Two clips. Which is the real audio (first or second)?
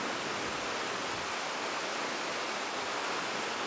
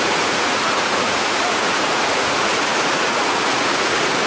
first